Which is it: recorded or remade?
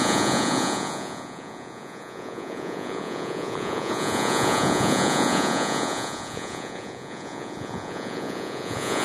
remade